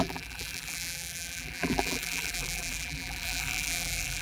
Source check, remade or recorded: remade